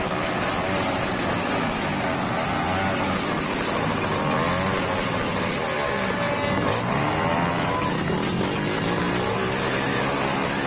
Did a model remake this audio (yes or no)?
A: no